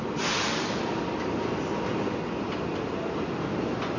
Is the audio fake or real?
real